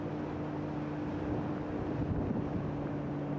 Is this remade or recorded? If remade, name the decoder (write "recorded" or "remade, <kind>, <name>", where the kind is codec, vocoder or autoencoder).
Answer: recorded